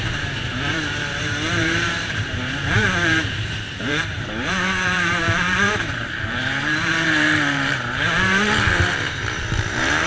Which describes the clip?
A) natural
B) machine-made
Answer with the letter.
B